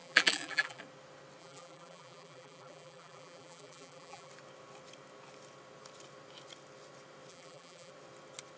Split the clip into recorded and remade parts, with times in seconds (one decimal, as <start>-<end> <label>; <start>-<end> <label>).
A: 0.0-0.8 remade; 0.8-1.4 recorded; 1.4-4.3 remade; 4.3-7.3 recorded; 7.3-7.9 remade; 7.9-8.6 recorded